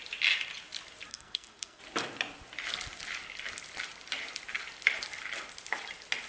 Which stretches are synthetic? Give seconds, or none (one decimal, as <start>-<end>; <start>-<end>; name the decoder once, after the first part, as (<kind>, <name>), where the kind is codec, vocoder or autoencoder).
1.1-1.8 (codec, SNAC)

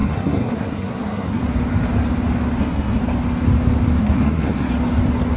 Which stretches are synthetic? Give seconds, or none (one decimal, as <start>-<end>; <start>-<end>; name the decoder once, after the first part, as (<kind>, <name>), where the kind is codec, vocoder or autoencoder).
0.0-1.4 (codec, SNAC); 2.6-3.0; 4.0-4.7

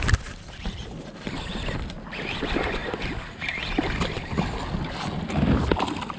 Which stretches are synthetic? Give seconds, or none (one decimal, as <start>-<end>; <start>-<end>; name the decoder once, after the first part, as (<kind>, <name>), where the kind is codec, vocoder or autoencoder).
none

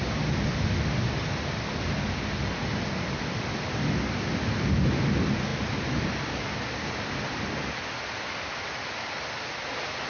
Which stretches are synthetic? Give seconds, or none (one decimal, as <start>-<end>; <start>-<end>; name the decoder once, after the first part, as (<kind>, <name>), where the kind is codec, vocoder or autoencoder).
none